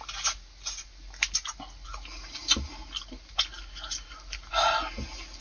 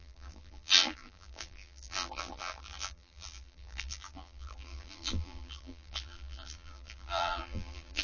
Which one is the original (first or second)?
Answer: first